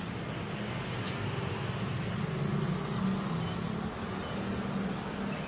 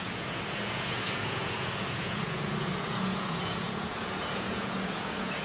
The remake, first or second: second